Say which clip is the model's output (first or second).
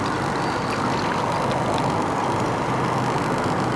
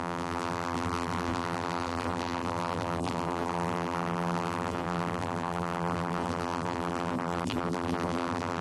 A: second